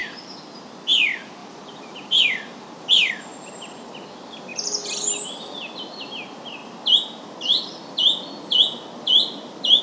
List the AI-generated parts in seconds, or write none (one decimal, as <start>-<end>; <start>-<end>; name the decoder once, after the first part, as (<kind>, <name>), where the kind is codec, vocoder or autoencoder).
0.0-0.7 (vocoder, BigVGAN v2); 1.4-3.1; 4.5-5.6